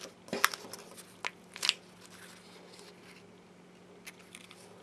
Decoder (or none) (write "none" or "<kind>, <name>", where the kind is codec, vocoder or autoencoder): none